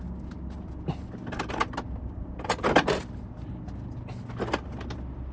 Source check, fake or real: real